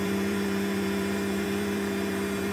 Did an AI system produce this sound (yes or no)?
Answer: yes